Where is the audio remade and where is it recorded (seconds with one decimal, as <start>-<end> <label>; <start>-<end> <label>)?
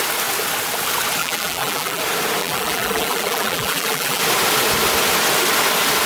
0.0-1.2 recorded; 1.2-2.0 remade; 2.0-2.4 recorded; 2.4-4.2 remade; 4.2-6.1 recorded